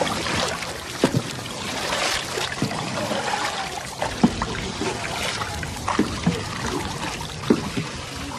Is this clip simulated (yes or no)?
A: no